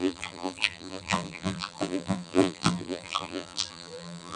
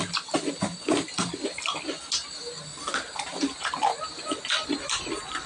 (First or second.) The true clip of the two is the second